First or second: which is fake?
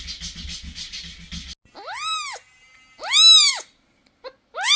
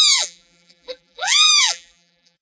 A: second